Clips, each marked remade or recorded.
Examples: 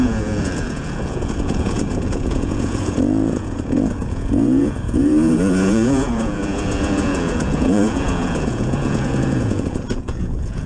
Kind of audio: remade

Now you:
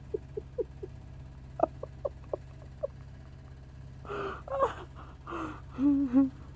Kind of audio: recorded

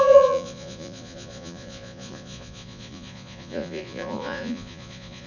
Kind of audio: remade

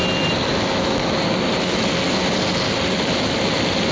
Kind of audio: recorded